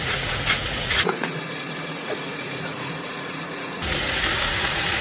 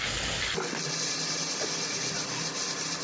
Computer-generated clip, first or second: first